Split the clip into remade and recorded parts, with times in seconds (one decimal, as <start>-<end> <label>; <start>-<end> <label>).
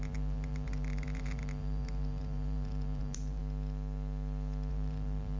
0.0-3.4 remade; 3.4-4.7 recorded; 4.7-5.4 remade